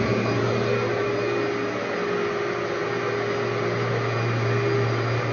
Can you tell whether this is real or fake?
real